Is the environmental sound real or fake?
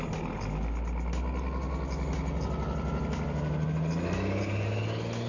real